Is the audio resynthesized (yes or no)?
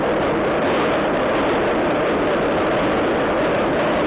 no